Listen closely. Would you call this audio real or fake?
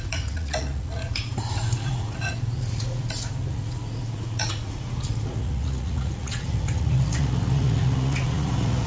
fake